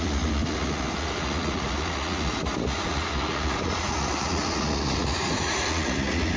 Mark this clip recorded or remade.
remade